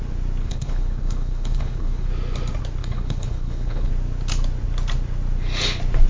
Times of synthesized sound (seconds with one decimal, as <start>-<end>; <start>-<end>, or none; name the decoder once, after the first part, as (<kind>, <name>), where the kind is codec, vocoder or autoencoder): 0.4-2.1 (codec, HILCodec); 2.8-3.9